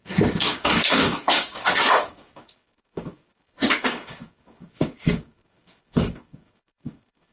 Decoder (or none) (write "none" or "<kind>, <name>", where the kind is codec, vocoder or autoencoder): codec, DAC